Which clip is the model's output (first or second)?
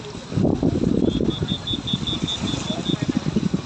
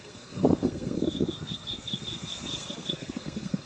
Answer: second